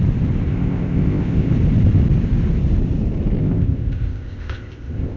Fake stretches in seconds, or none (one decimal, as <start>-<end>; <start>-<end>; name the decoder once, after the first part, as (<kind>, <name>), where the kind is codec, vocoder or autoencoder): 0.5-1.5 (codec, ZipCodec); 3.4-5.2